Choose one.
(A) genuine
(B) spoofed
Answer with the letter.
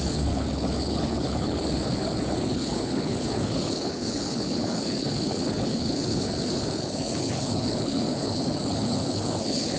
B